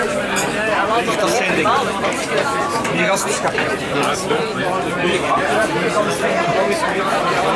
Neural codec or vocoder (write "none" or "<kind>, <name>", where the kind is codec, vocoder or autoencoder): vocoder, BigVGAN v2